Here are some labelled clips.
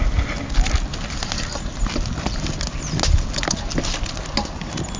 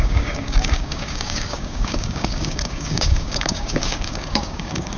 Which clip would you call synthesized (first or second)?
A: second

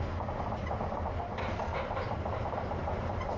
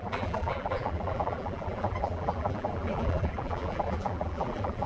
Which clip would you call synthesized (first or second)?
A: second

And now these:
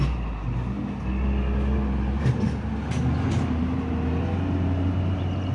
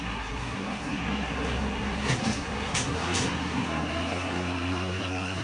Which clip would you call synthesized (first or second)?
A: second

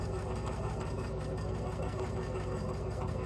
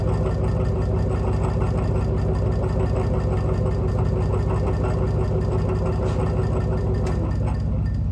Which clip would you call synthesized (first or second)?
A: first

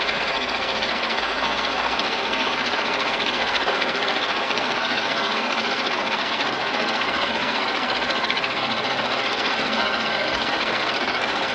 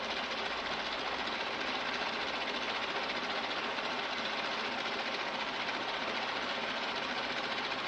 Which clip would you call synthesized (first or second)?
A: first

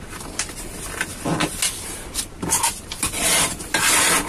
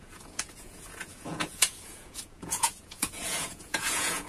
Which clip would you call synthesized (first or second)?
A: second